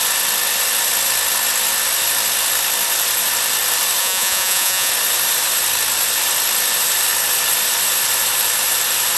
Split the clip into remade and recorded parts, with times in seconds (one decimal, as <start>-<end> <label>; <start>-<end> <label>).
0.0-4.0 recorded; 4.0-4.9 remade; 4.9-9.2 recorded